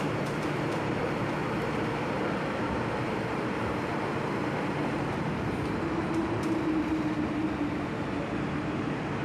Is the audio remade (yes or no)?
yes